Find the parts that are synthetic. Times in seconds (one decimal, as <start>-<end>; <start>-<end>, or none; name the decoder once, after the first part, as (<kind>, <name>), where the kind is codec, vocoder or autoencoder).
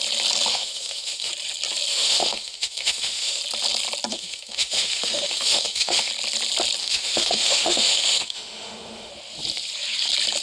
0.5-1.3 (autoencoder, DAC-VAE); 1.9-3.4; 4.1-6.1; 6.8-9.1